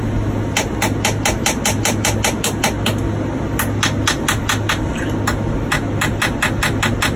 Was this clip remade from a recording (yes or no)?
no